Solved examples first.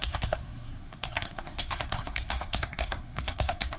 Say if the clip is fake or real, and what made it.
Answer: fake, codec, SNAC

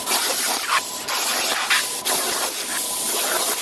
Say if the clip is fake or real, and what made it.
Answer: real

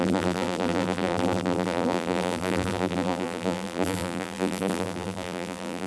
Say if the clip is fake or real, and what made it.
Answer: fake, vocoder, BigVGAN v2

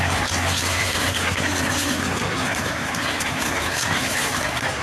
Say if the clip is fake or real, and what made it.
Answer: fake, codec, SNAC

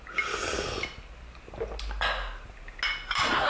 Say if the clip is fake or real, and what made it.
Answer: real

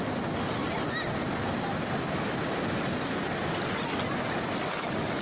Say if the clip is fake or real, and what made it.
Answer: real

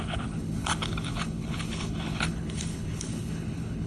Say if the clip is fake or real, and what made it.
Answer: fake, codec, HILCodec